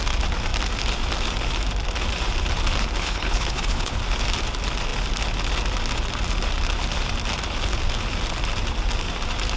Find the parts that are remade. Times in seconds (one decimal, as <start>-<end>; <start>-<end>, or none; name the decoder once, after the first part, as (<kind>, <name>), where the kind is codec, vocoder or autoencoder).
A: 3.0-4.0 (codec, HILCodec)